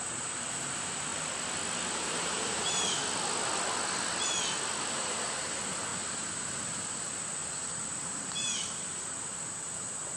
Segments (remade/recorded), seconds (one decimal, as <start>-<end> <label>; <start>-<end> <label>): 0.0-1.1 remade; 1.1-1.9 recorded; 1.9-3.0 remade; 3.0-4.9 recorded; 4.9-10.2 remade